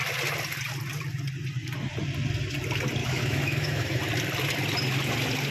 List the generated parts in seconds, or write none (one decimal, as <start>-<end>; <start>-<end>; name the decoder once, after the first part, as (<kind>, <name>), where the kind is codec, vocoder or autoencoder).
3.0-4.0 (autoencoder, DAC-VAE)